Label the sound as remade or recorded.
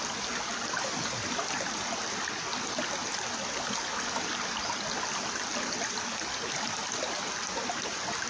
recorded